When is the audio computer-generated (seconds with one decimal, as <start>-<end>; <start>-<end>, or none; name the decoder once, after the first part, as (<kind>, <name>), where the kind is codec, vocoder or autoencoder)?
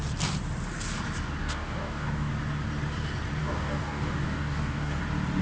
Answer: 1.4-2.3 (codec, DAC); 3.4-5.0